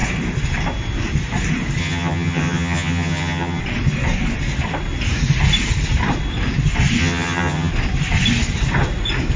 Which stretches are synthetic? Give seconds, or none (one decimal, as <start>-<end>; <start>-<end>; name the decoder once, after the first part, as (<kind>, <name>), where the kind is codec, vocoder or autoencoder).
1.8-3.6 (vocoder, HiFi-GAN); 7.0-7.7